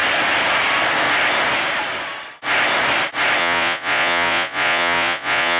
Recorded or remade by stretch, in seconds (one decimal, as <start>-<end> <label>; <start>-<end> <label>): 0.0-3.4 recorded; 3.4-5.6 remade